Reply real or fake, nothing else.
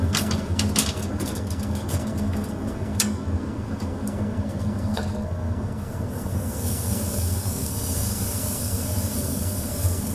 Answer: fake